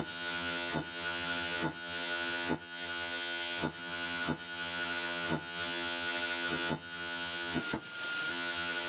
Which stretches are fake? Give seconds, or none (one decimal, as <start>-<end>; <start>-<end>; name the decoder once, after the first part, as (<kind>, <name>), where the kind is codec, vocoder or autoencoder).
0.0-7.6 (vocoder, HiFi-GAN); 8.3-8.9